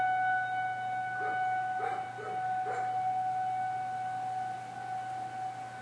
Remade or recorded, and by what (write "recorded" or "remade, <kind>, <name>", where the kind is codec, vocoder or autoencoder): recorded